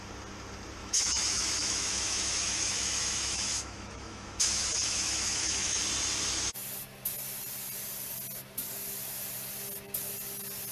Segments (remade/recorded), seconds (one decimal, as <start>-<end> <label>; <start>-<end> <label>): 0.0-0.8 recorded; 0.8-5.8 remade; 5.8-10.7 recorded